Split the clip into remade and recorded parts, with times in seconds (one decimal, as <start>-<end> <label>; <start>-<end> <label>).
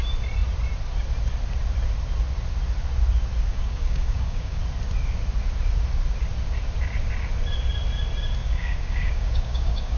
0.0-3.5 recorded; 3.5-4.6 remade; 4.6-8.4 recorded; 8.4-10.0 remade